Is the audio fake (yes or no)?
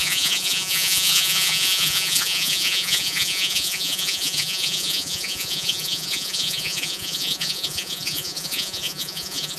yes